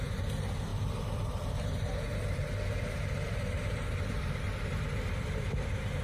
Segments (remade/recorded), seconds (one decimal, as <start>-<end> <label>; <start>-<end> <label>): 0.0-6.0 remade